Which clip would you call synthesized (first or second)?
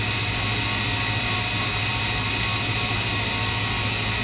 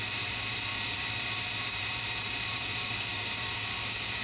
second